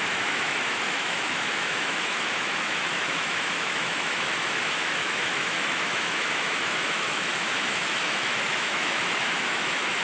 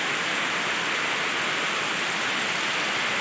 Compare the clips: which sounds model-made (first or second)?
first